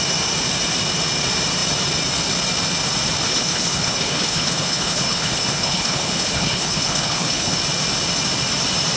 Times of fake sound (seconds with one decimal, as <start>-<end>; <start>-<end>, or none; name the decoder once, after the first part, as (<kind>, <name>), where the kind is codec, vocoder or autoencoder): 3.3-7.6 (codec, HILCodec)